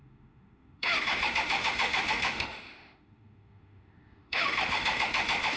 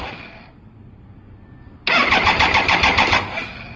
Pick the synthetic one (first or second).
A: first